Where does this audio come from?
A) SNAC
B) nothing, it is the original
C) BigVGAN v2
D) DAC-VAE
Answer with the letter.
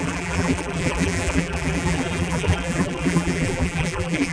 C